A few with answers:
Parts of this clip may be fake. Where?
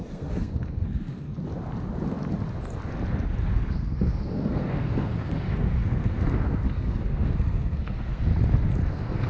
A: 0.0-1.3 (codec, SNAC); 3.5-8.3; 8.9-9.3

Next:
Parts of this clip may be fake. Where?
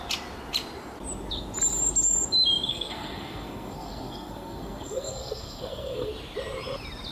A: 2.7-6.1 (codec, SNAC)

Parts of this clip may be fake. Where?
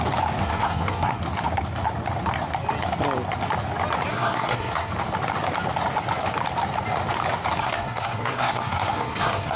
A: 0.4-1.2 (codec, SNAC); 4.1-4.9; 7.6-9.6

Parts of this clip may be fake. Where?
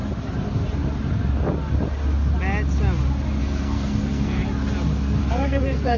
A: 3.4-4.4 (codec, SNAC); 5.2-6.0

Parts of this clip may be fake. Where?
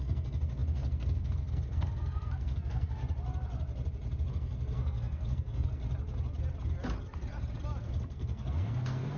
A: 0.0-3.0 (codec, SNAC); 4.3-5.8; 7.8-9.2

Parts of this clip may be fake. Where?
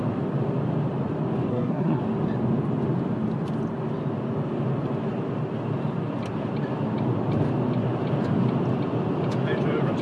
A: 1.5-2.0 (codec, SNAC)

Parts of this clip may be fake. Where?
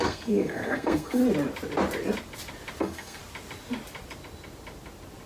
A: 0.0-1.2 (codec, SNAC); 2.8-3.2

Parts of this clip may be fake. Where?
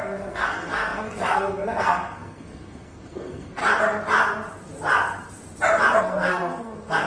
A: 0.0-3.6 (codec, SNAC); 6.0-7.1